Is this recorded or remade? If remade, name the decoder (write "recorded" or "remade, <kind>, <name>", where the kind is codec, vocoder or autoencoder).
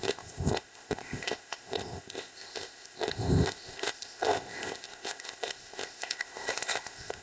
remade, codec, ZipCodec